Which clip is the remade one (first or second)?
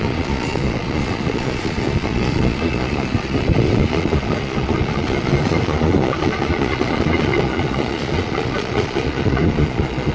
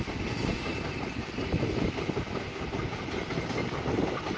first